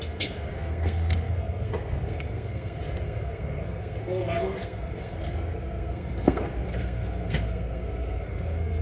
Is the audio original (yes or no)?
no